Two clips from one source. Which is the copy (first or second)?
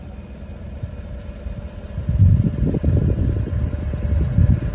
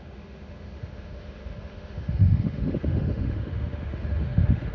second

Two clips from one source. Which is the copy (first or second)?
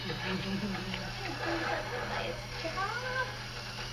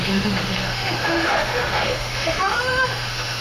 second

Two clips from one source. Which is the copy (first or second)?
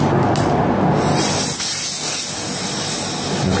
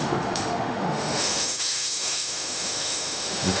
second